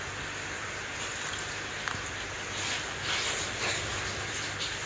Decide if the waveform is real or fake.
real